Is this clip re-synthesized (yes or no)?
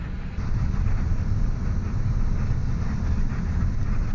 no